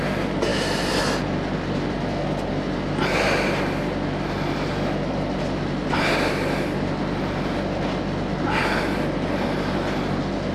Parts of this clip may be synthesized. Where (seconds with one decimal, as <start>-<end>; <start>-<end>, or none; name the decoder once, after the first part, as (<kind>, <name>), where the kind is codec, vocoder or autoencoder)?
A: none